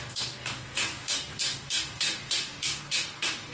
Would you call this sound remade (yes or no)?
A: yes